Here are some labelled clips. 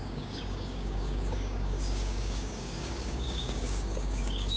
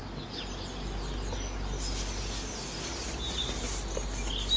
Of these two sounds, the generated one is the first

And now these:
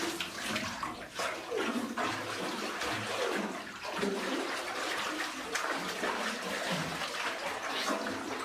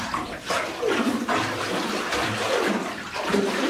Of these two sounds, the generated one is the second